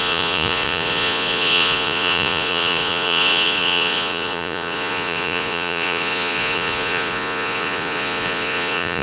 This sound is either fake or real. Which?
fake